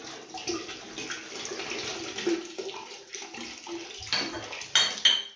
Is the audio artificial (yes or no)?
no